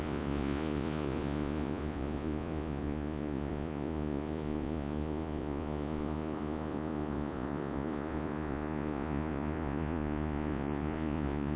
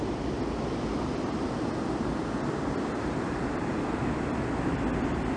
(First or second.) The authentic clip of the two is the second